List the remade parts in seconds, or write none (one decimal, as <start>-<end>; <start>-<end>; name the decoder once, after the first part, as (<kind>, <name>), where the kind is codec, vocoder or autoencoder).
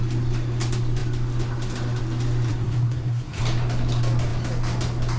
2.5-3.4 (codec, SNAC)